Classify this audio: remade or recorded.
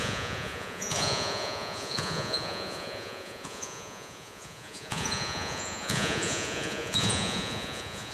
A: remade